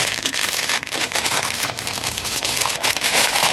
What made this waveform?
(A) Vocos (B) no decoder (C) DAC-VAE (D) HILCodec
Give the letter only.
C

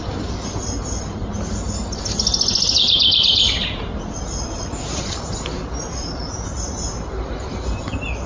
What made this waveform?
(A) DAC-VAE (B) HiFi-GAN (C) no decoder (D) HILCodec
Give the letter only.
C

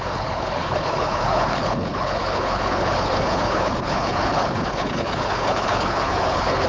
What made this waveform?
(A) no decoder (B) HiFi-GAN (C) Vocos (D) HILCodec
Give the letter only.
D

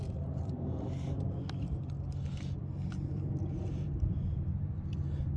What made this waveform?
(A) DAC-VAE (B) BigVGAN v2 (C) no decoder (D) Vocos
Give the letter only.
B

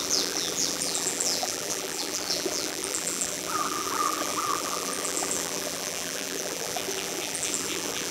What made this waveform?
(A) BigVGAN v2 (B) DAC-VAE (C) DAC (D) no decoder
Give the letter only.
A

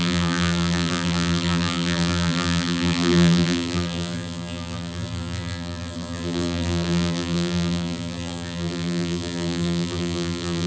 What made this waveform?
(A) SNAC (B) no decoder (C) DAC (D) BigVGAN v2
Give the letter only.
D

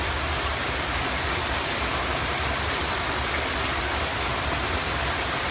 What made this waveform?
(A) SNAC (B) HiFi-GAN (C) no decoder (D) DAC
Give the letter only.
C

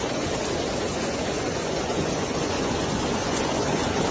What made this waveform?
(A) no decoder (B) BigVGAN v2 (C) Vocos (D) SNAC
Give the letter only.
C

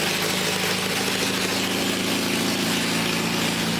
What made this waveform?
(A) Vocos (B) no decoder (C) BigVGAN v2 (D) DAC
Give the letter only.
B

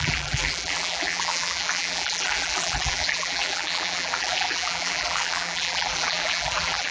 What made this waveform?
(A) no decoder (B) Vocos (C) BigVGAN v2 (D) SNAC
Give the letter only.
C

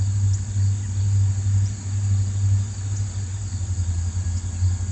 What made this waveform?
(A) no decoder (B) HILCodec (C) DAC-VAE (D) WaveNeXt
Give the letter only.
A